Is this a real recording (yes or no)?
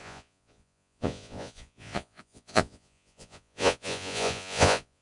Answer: no